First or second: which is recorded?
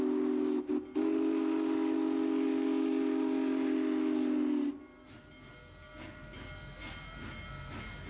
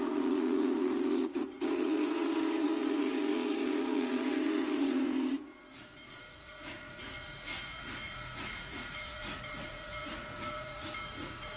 first